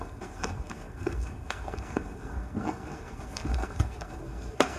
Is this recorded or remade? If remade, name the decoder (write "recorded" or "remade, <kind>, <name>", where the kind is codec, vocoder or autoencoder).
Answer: remade, codec, SNAC